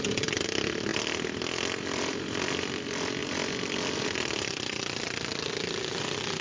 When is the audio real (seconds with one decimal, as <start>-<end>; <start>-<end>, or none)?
0.0-6.4